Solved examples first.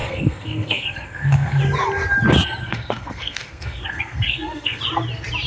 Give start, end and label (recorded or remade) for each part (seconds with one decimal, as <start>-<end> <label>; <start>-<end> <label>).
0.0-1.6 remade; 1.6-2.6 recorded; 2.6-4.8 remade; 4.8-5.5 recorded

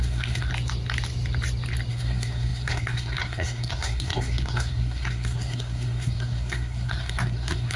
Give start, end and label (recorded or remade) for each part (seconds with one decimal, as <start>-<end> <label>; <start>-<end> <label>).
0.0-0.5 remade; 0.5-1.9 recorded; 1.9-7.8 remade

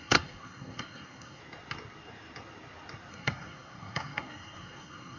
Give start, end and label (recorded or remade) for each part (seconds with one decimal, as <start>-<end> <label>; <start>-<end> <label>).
0.0-1.4 remade; 1.4-3.1 recorded; 3.1-5.2 remade